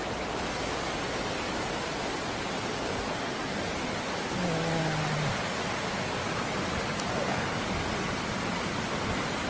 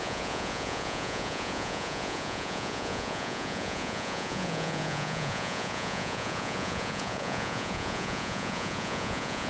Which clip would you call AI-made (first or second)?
second